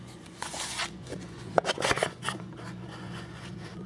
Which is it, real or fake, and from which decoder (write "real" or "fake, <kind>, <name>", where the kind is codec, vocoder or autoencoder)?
fake, vocoder, Vocos